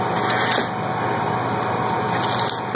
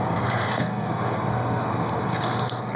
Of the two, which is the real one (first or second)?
first